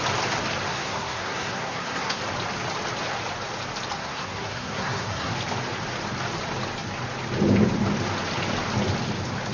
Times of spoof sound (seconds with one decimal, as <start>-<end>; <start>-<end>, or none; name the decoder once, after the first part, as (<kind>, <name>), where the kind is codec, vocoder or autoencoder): 0.7-2.2 (codec, SNAC); 4.0-5.3